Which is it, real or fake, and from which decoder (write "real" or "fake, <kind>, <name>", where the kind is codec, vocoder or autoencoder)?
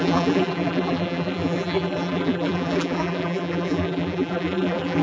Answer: fake, vocoder, BigVGAN v2